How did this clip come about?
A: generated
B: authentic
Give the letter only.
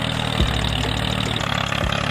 B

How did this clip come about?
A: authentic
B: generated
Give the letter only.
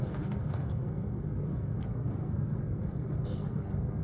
B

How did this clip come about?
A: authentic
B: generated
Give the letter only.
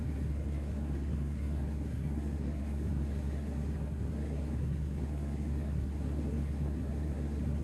B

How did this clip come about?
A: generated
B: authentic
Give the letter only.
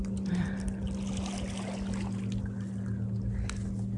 B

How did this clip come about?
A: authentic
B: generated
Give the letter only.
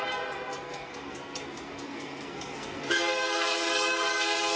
B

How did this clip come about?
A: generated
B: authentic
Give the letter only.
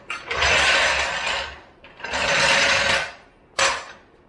B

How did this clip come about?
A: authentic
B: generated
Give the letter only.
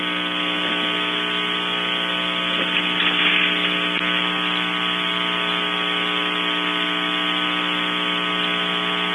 A